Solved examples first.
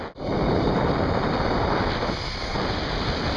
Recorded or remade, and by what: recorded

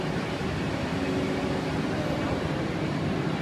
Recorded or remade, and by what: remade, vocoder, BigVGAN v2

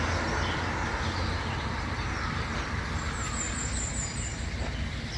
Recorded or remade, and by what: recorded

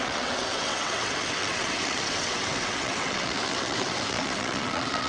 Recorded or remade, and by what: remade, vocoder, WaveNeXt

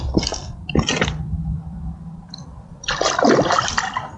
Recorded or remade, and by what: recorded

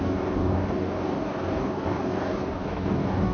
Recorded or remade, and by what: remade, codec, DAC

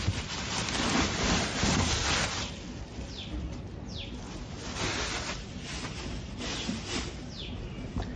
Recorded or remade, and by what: recorded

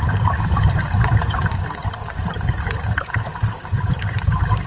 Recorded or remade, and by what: remade, vocoder, BigVGAN v2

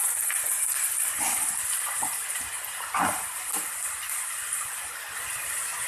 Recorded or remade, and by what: recorded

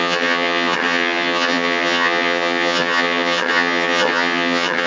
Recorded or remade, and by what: remade, vocoder, HiFi-GAN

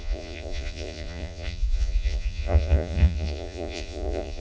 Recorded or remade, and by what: remade, vocoder, Vocos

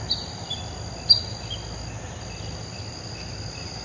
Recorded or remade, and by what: recorded